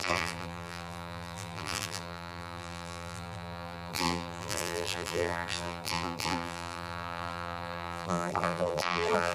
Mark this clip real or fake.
fake